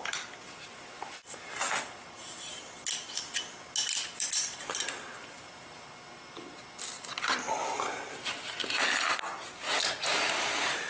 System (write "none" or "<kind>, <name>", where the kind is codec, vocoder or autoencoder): none